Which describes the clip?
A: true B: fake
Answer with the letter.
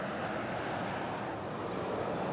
A